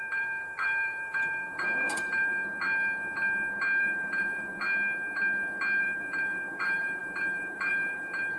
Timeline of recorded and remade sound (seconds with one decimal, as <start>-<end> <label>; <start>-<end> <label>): 0.0-2.4 remade; 2.4-3.8 recorded; 3.8-4.5 remade; 4.5-5.8 recorded; 5.8-8.4 remade

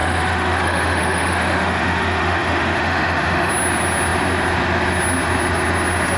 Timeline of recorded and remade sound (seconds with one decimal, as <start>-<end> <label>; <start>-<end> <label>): 0.0-3.5 remade; 3.5-6.2 recorded

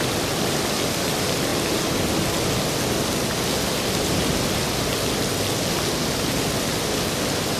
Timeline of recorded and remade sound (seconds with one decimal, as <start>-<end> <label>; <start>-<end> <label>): 0.0-7.6 recorded

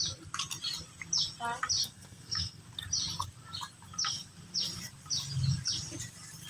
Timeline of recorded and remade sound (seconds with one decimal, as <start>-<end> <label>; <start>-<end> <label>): 0.0-1.8 recorded; 1.8-2.6 remade; 2.6-6.5 recorded

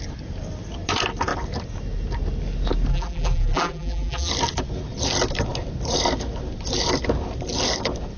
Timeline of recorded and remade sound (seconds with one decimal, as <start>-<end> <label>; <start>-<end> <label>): 0.0-2.9 recorded; 2.9-4.3 remade; 4.3-8.2 recorded

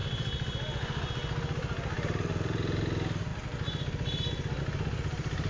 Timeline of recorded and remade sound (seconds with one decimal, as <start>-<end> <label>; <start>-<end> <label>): 0.0-5.5 recorded

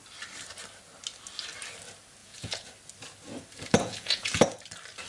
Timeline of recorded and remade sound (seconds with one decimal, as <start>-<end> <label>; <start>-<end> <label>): 0.0-2.2 recorded; 2.2-2.7 remade; 2.7-3.8 recorded; 3.8-4.4 remade; 4.4-5.1 recorded

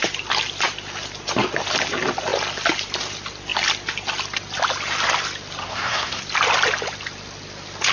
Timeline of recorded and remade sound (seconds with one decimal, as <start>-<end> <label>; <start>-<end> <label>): 0.0-5.6 recorded; 5.6-6.2 remade; 6.2-7.9 recorded